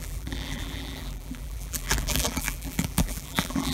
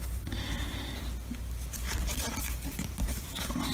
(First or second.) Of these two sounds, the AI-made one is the first